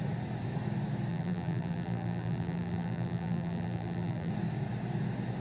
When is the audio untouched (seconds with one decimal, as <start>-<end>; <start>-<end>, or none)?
0.0-1.1; 4.3-5.4